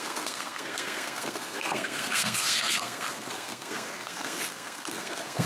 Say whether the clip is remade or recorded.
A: remade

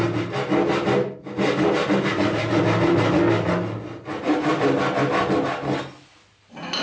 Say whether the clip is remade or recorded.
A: recorded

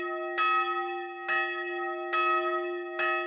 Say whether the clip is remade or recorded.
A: recorded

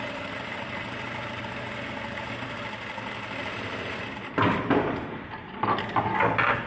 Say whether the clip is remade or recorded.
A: recorded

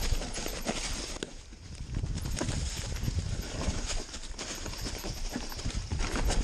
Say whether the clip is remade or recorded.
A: remade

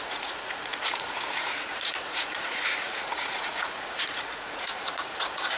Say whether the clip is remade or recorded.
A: remade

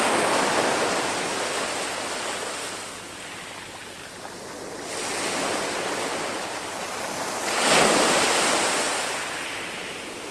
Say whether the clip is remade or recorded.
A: recorded